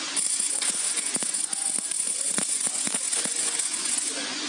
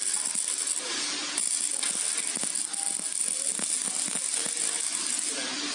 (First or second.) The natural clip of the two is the second